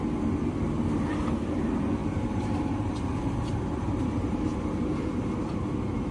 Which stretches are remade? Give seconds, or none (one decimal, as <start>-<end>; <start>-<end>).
2.0-5.6